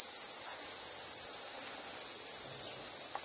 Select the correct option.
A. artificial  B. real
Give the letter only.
B